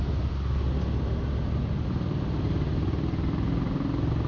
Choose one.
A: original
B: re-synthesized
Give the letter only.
A